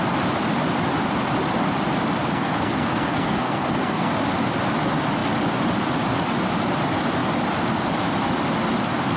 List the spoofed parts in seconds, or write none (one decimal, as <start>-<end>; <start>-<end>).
2.2-4.1